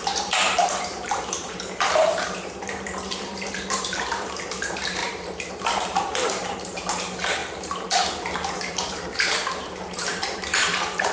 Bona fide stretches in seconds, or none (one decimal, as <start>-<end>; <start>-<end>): 7.4-8.7